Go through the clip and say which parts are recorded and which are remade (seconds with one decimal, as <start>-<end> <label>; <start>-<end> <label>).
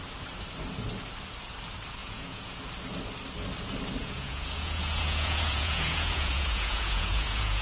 0.0-2.0 recorded; 2.0-2.6 remade; 2.6-4.0 recorded; 4.0-7.6 remade